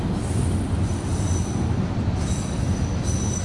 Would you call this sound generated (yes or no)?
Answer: no